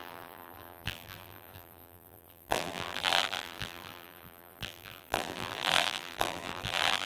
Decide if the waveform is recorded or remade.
remade